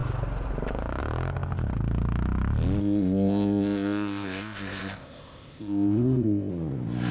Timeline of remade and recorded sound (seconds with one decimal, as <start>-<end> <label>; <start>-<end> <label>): 0.0-2.8 recorded; 2.8-6.5 remade; 6.5-7.1 recorded